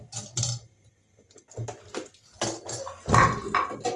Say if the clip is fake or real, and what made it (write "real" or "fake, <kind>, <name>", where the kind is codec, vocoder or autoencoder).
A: real